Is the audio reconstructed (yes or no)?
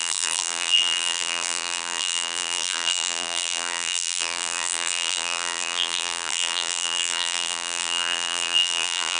yes